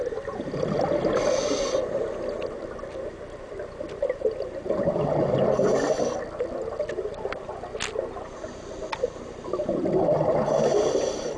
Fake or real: real